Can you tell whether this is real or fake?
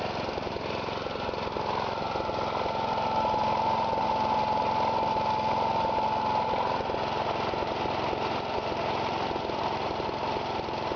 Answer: real